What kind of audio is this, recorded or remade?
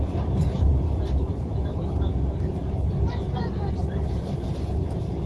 recorded